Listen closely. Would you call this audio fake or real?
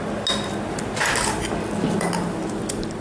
real